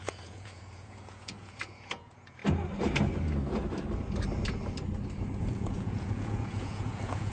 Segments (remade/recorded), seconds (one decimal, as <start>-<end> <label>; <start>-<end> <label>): 0.0-2.4 remade; 2.4-5.4 recorded; 5.4-7.3 remade